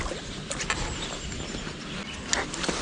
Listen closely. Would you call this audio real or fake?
real